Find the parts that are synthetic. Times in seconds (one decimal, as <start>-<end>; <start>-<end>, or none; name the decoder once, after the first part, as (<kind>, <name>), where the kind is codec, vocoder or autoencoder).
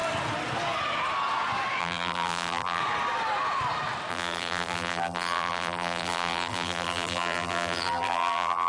1.8-2.8 (vocoder, BigVGAN v2); 4.1-8.7